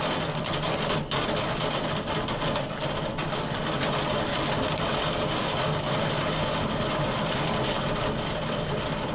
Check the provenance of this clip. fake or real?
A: real